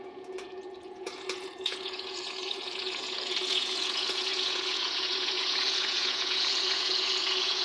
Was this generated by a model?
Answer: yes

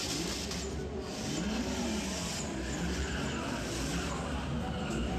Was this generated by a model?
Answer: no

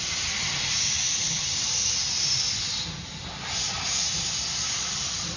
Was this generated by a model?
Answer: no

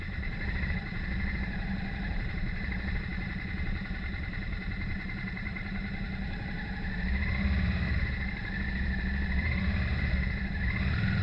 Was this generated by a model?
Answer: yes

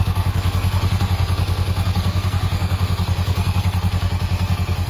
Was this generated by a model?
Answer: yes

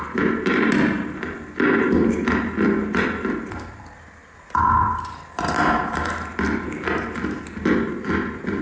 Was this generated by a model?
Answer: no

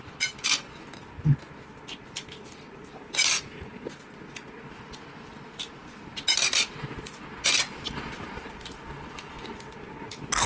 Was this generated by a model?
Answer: no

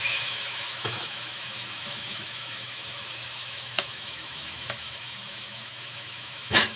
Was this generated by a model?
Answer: yes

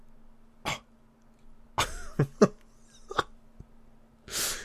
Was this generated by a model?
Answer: no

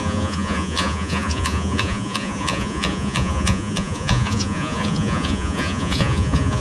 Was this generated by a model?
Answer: yes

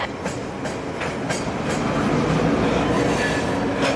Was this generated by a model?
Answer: no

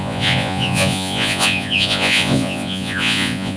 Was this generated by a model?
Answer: yes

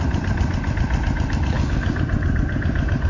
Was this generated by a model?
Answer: no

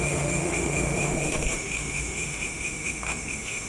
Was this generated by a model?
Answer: yes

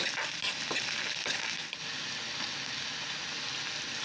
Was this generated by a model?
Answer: no